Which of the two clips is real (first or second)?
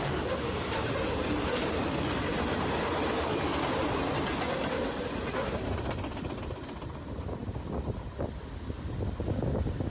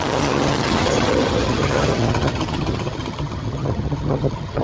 first